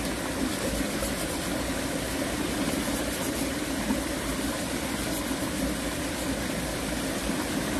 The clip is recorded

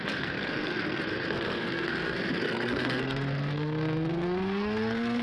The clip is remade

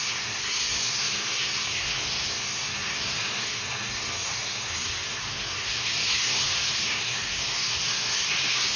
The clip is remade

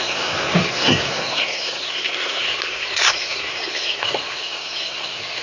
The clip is remade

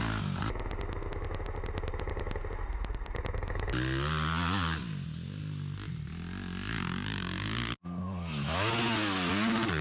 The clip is recorded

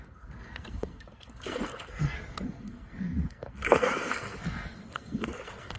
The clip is remade